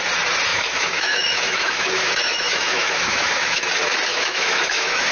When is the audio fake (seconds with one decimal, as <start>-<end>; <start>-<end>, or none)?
0.5-3.6; 4.1-5.1